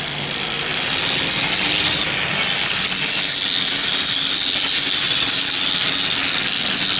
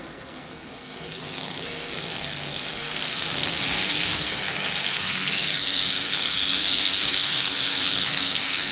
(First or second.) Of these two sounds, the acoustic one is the first